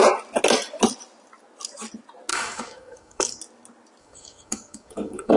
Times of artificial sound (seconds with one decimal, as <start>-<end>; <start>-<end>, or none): 2.3-3.4; 4.0-5.4